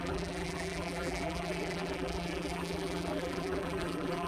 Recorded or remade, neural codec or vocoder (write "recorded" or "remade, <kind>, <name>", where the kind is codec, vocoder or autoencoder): remade, vocoder, BigVGAN v2